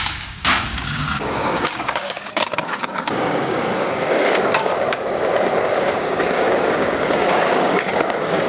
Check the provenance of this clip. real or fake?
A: fake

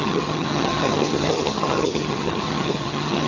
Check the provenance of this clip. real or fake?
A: fake